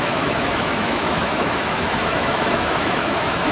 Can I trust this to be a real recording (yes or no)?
no